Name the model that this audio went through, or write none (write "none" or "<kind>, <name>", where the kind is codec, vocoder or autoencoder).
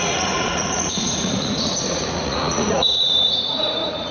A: vocoder, Vocos